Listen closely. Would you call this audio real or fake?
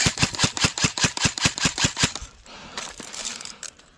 fake